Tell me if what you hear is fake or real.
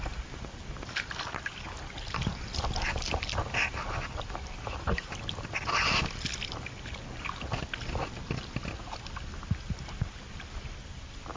real